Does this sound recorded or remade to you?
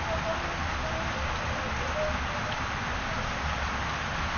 recorded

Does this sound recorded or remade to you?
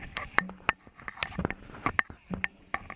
recorded